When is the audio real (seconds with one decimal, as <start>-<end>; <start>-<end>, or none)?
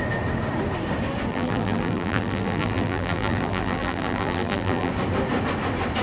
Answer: 0.0-1.3; 4.9-6.0